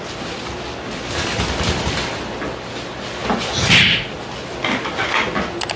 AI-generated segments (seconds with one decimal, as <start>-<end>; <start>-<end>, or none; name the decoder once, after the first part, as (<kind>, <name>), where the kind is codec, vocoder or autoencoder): none